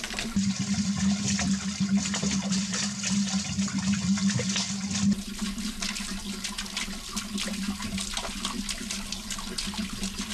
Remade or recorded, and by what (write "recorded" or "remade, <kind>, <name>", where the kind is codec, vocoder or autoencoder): recorded